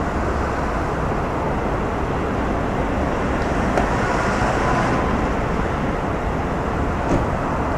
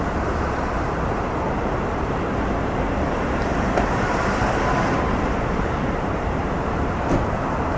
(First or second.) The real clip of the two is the first